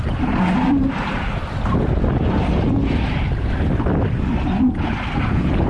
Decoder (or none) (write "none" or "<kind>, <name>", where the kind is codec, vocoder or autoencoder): none